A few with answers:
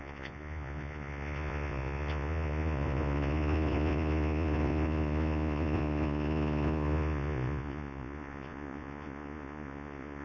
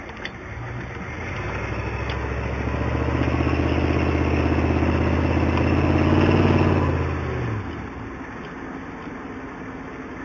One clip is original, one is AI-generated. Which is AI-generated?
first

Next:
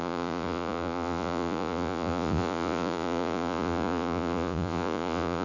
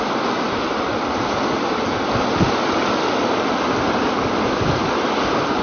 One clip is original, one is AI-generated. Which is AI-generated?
first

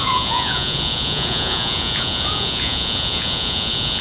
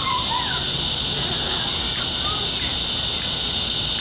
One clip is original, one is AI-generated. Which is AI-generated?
first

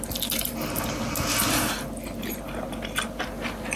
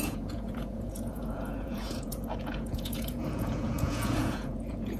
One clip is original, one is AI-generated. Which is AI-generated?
second